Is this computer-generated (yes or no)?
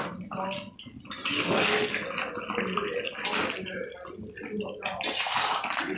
no